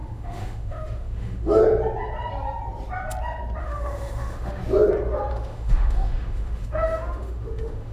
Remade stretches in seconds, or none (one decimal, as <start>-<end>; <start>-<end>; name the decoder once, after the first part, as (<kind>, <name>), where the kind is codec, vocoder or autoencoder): 0.0-1.6 (autoencoder, DAC-VAE); 3.6-4.6; 5.3-7.9